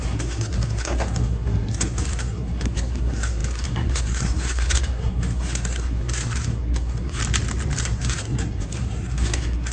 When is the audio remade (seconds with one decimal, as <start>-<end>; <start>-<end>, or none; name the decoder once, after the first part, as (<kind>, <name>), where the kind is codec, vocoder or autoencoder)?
0.0-7.2 (codec, SNAC); 7.8-9.7